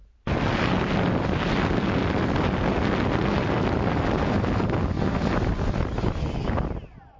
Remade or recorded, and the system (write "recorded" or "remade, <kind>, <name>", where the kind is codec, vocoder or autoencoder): recorded